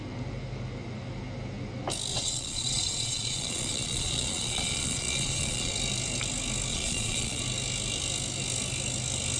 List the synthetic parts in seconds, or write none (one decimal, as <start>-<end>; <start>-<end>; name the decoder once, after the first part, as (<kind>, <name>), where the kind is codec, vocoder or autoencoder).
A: 2.1-5.7 (vocoder, Vocos); 6.7-7.4